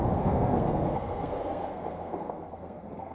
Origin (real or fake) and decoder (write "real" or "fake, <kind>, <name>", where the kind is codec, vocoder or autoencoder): fake, codec, SNAC